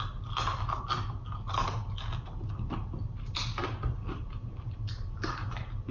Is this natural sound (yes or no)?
yes